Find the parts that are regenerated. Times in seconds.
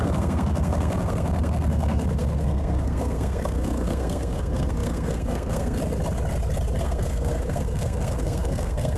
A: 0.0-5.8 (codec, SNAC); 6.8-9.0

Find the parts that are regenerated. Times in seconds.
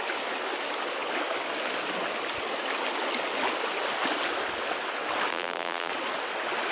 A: 5.3-5.9 (vocoder, BigVGAN v2)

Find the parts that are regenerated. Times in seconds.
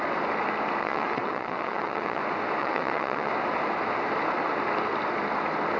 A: 0.8-2.2 (vocoder, WaveNeXt); 2.6-3.3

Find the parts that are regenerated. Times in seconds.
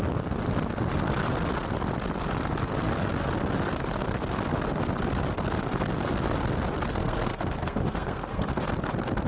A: 7.0-8.5 (codec, SNAC)